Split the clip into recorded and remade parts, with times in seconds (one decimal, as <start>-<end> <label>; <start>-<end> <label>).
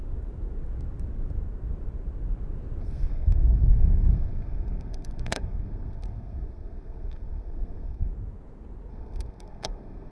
0.0-2.8 recorded; 2.8-8.1 remade; 8.1-8.9 recorded; 8.9-10.1 remade